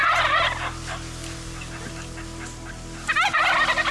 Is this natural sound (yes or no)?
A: yes